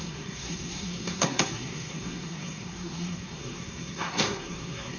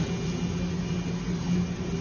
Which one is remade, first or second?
first